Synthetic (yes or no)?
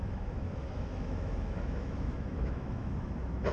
yes